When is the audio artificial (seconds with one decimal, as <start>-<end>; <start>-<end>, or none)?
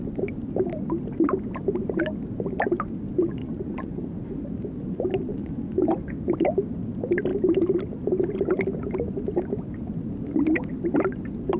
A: 3.4-4.0; 5.3-5.9